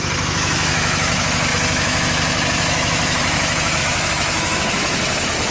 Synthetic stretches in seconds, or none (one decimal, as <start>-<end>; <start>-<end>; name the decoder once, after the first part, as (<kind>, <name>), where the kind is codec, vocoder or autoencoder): 0.0-5.5 (autoencoder, DAC-VAE)

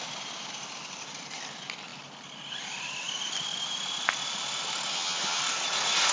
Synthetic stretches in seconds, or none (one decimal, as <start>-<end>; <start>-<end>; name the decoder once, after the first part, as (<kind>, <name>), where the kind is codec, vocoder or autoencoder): 4.9-5.4 (vocoder, HiFi-GAN)

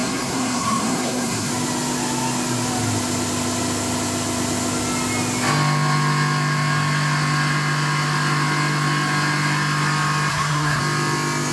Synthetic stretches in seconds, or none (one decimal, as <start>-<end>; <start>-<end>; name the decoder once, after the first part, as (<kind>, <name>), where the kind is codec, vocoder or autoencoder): 0.0-1.5 (codec, SNAC); 10.3-10.8